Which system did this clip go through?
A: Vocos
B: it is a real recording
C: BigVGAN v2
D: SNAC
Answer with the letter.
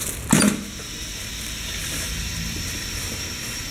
B